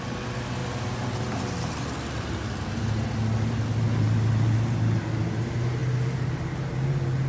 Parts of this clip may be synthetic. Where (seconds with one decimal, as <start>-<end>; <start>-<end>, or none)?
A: none